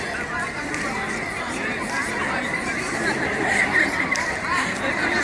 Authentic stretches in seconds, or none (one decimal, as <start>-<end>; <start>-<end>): 0.0-2.0